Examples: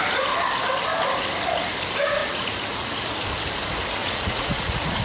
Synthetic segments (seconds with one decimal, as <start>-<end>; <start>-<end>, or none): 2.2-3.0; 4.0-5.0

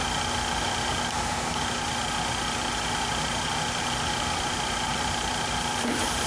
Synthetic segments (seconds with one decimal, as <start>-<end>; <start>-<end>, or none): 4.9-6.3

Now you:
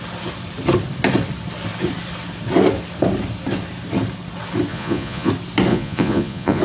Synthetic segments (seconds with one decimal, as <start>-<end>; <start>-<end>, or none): 4.7-5.3; 5.7-6.6

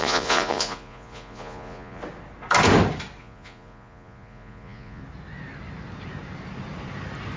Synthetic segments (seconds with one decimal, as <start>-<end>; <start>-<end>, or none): 0.0-2.0; 3.2-5.0

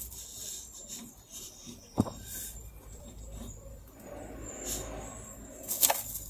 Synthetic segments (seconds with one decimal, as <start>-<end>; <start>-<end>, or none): 1.3-4.5